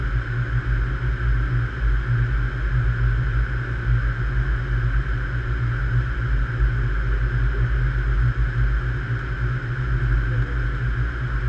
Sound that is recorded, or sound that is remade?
recorded